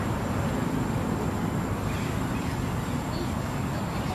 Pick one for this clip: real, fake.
real